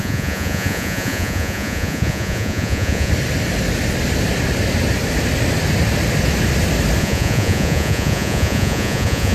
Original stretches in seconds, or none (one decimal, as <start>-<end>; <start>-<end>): 3.1-7.0